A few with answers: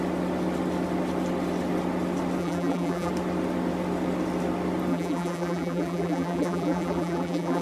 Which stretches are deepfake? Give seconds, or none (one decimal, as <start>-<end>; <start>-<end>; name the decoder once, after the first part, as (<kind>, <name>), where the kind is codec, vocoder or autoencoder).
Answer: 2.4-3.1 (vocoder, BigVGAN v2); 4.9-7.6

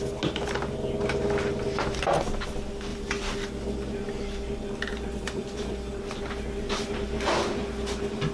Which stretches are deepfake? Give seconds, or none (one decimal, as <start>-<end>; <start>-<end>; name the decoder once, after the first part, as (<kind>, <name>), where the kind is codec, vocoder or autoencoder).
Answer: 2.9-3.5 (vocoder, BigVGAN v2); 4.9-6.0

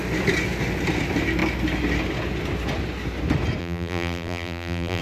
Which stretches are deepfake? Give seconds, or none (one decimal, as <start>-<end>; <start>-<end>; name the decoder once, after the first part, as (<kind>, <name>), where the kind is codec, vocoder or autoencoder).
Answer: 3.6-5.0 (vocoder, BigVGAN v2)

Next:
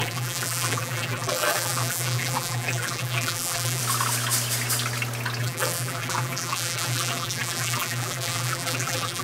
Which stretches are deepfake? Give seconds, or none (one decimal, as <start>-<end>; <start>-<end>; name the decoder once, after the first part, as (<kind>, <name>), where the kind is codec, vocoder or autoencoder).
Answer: 0.0-3.8 (vocoder, BigVGAN v2); 5.4-9.2

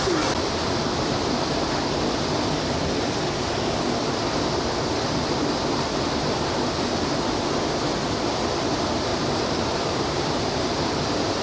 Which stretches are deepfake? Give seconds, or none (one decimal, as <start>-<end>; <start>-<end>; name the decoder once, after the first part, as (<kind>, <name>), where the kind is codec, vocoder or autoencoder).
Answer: 9.1-11.4 (vocoder, BigVGAN v2)

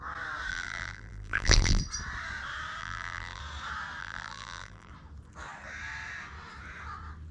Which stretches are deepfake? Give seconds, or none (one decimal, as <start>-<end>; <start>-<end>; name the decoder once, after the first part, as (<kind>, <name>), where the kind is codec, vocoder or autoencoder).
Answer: 0.5-1.8 (vocoder, BigVGAN v2); 2.8-3.4; 4.0-4.9

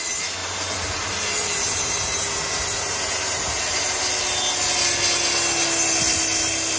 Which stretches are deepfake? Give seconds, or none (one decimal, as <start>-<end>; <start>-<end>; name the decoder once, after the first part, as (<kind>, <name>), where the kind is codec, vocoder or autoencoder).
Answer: 0.4-4.0 (vocoder, BigVGAN v2)

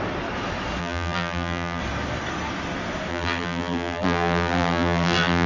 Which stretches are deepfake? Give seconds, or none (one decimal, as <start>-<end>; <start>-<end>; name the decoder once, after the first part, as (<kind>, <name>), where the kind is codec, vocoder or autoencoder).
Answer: 0.8-1.8 (vocoder, BigVGAN v2); 3.1-5.5